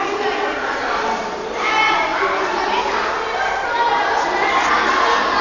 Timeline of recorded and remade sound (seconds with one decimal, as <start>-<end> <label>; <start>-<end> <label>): 0.0-5.4 recorded